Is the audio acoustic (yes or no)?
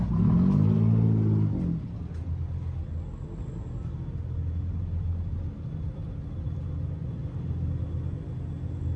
yes